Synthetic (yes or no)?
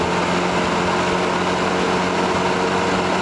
no